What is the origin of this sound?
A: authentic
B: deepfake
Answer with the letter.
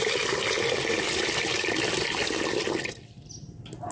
A